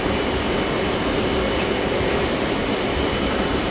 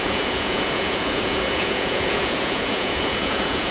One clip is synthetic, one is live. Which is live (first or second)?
first